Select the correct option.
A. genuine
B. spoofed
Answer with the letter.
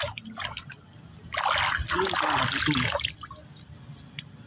A